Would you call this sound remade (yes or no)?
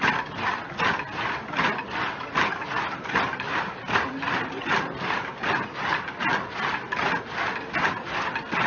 no